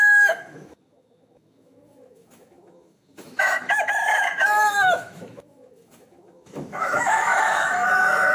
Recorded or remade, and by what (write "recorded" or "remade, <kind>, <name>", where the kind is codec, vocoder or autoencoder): remade, autoencoder, DAC-VAE